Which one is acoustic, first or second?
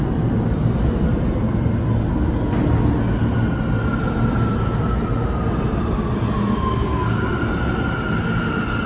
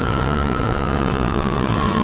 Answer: first